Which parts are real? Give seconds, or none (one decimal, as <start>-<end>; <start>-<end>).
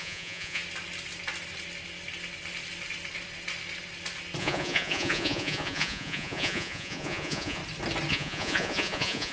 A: 0.6-4.4; 7.6-8.1